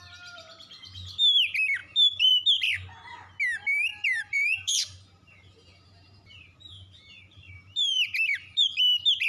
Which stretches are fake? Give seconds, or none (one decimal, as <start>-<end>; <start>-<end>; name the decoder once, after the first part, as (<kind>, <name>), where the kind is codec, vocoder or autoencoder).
1.8-2.3 (vocoder, BigVGAN v2); 3.9-8.8